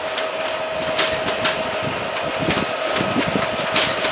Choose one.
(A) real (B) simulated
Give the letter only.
A